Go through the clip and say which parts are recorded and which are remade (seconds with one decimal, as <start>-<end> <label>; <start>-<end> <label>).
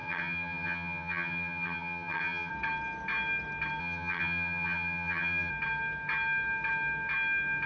0.0-2.5 remade; 2.5-3.8 recorded; 3.8-5.5 remade; 5.5-7.7 recorded